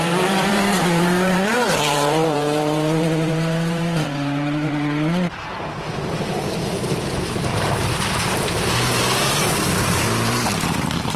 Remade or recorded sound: remade